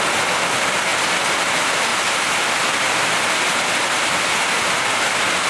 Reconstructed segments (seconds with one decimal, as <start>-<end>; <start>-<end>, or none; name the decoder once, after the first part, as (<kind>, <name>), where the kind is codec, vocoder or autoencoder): none